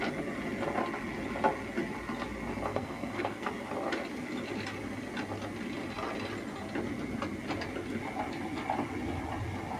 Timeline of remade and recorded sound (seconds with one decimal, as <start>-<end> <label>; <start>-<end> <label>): 0.0-2.7 recorded; 2.7-3.5 remade; 3.5-9.8 recorded